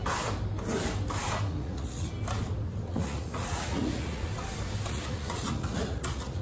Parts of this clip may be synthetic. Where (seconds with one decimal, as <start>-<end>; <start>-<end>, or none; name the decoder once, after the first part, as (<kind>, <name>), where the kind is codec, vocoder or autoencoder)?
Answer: 1.5-2.1 (vocoder, Vocos); 2.9-4.3; 4.9-6.4